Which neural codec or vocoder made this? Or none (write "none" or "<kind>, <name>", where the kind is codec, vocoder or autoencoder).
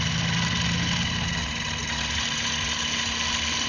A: none